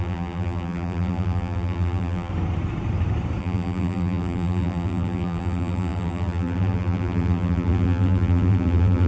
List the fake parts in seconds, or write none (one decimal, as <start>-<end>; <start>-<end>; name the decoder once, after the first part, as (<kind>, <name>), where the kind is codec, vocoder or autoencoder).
0.0-2.3 (vocoder, BigVGAN v2); 3.4-9.1